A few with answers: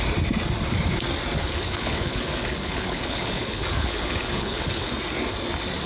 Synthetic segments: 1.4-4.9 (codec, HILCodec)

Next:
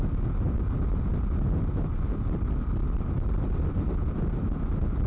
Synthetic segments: none

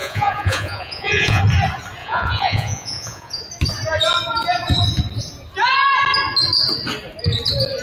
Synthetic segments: 0.0-1.4 (vocoder, Vocos); 2.0-3.4

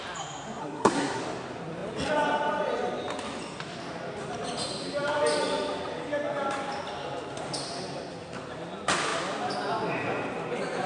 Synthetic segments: 0.6-1.2 (codec, SNAC)

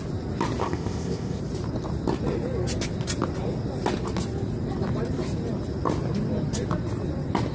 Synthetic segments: 0.6-1.4 (codec, ZipCodec)